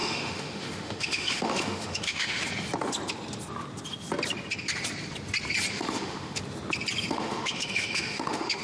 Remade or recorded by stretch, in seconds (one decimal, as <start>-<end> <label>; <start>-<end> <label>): 0.0-2.4 remade; 2.4-5.7 recorded; 5.7-6.4 remade; 6.4-7.1 recorded; 7.1-8.6 remade